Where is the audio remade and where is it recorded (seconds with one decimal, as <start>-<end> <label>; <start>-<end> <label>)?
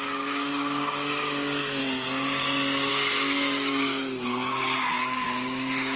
0.0-1.8 remade; 1.8-2.9 recorded; 2.9-6.0 remade